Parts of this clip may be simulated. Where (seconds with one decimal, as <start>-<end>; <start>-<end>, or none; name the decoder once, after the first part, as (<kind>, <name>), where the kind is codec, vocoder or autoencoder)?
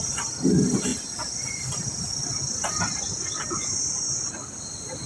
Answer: none